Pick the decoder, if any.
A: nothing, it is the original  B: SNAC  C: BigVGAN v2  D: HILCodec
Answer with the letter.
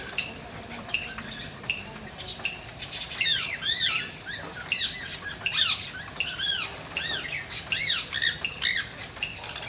C